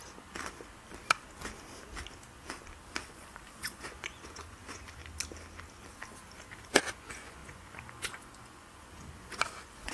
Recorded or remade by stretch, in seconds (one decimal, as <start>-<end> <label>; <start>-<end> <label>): 0.0-3.0 recorded; 3.0-5.0 remade; 5.0-6.6 recorded; 6.6-9.9 remade